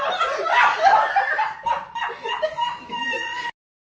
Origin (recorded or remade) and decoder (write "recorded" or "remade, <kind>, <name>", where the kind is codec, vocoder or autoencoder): recorded